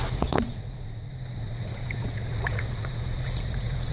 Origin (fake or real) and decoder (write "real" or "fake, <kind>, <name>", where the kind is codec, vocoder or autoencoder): fake, vocoder, Vocos